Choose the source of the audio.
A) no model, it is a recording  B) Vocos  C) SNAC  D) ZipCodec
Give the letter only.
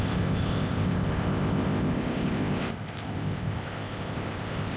D